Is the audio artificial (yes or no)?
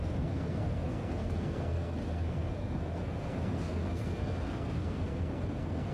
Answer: yes